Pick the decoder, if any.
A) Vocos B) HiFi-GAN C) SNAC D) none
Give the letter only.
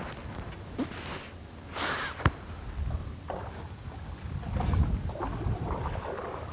D